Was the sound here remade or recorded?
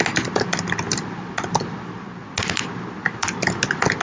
recorded